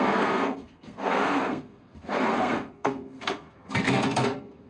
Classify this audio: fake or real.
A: fake